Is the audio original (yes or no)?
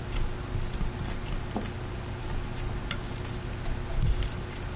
yes